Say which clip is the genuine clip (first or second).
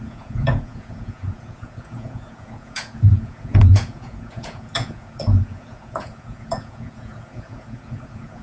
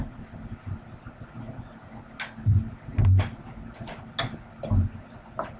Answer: second